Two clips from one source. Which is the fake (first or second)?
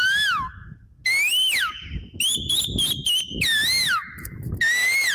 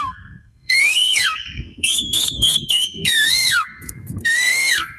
second